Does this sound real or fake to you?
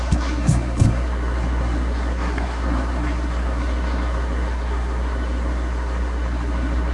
fake